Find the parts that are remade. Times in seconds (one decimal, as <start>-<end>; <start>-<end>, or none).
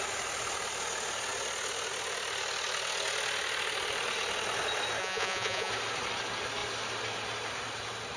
5.0-5.7